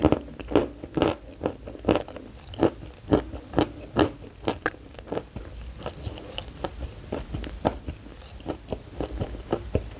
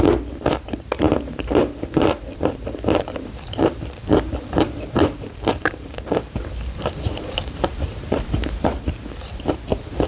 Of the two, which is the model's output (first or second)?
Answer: second